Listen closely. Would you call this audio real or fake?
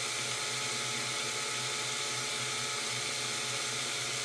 real